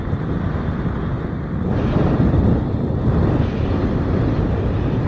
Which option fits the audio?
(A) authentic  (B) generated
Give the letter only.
A